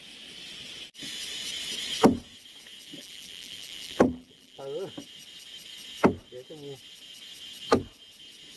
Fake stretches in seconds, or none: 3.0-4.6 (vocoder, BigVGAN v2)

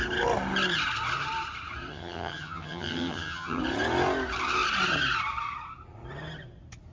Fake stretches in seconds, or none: 1.9-3.6 (vocoder, HiFi-GAN)

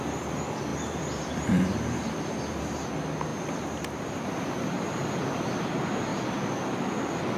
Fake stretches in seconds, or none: 0.7-2.6 (vocoder, BigVGAN v2); 3.3-4.9